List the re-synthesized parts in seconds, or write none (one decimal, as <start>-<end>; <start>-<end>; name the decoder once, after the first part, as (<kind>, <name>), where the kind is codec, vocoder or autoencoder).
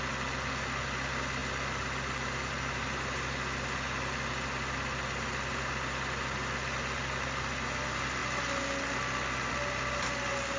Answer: none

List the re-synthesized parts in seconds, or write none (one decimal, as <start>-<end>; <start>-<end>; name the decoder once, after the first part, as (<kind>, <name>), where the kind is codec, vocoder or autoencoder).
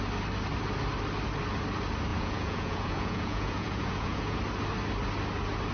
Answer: 2.1-4.4 (vocoder, Vocos)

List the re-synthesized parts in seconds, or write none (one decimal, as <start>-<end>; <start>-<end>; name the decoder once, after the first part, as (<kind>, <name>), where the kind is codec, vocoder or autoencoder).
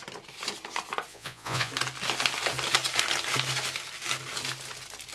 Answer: 1.1-1.7 (vocoder, Vocos)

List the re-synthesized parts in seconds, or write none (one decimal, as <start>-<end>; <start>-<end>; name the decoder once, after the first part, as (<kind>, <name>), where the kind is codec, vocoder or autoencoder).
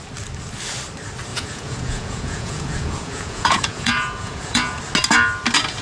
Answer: 1.3-4.8 (vocoder, Vocos)